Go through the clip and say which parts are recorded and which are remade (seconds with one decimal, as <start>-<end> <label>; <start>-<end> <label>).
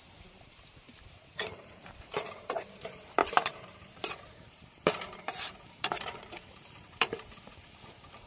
0.0-8.3 remade